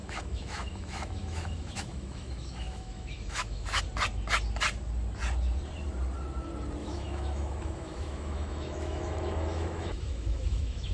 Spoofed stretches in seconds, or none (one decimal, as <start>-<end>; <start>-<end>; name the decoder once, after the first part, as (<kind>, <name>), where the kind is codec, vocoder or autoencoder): 0.0-3.8 (autoencoder, DAC-VAE); 6.8-10.9